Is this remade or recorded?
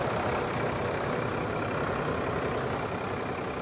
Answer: recorded